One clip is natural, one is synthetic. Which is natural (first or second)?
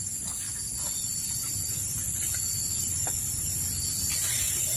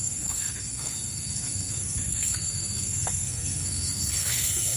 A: first